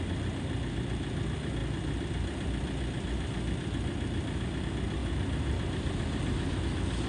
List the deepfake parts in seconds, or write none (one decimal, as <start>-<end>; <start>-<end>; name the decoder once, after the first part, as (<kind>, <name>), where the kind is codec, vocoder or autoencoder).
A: 5.0-6.6 (vocoder, BigVGAN v2)